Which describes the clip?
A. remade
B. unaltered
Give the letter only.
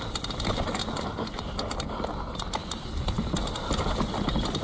B